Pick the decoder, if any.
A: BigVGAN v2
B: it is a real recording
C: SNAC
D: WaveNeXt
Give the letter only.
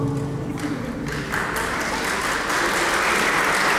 B